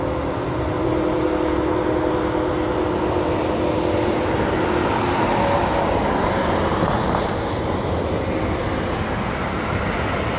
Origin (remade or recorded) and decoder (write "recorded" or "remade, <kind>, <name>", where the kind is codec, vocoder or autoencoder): recorded